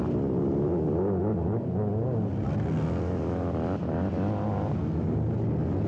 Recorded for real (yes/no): yes